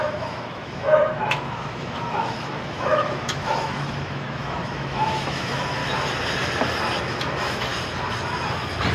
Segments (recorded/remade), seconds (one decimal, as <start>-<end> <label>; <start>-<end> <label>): 0.0-5.8 remade; 5.8-7.0 recorded; 7.0-7.7 remade; 7.7-8.9 recorded